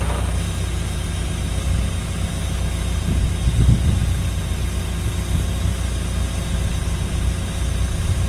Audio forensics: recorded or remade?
recorded